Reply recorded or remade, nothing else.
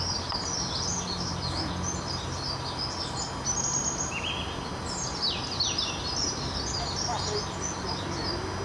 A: recorded